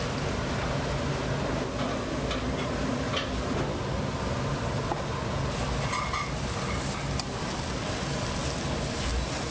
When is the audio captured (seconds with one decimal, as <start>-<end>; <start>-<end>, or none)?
0.0-9.5